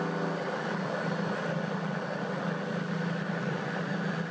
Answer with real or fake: real